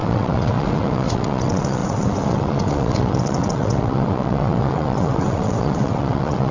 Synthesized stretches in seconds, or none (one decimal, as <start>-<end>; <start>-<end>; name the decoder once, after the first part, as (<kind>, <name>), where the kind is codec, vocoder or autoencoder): 0.0-6.5 (vocoder, WaveNeXt)